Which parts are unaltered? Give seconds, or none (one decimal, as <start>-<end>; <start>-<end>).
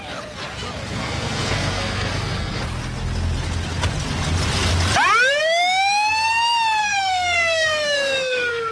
0.0-1.0; 2.6-6.8